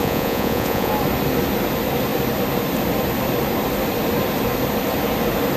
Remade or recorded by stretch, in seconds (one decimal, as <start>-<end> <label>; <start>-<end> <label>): 0.0-0.9 remade; 0.9-5.6 recorded